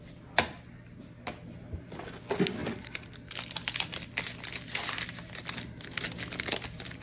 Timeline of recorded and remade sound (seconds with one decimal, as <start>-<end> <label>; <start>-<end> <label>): 0.0-7.0 recorded